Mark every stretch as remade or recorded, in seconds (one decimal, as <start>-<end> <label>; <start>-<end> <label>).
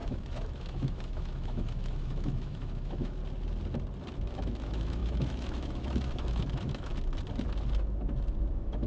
0.0-3.2 remade; 3.2-4.3 recorded; 4.3-6.9 remade; 6.9-8.5 recorded; 8.5-8.9 remade